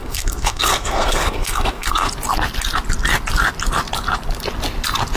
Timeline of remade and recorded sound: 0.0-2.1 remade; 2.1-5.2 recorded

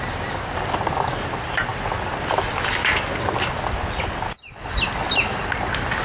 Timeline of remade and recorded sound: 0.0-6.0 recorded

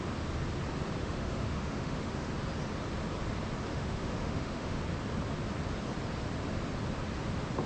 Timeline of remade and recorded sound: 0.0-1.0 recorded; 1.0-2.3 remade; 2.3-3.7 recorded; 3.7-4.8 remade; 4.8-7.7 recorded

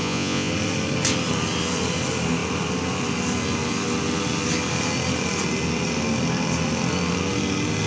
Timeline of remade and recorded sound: 0.0-0.5 remade; 0.5-7.9 recorded